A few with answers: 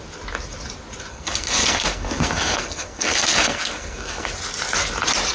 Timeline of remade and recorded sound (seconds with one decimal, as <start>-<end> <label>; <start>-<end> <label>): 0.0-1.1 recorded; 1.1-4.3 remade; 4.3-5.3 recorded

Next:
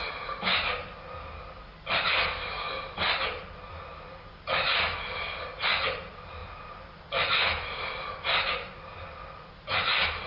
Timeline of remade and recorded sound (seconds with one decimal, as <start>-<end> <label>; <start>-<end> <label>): 0.0-10.3 recorded

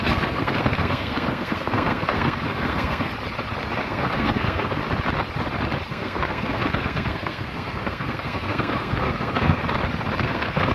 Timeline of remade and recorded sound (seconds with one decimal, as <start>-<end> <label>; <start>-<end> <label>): 0.0-3.1 remade; 3.1-3.8 recorded; 3.8-4.8 remade; 4.8-5.9 recorded; 5.9-9.6 remade; 9.6-10.2 recorded; 10.2-10.7 remade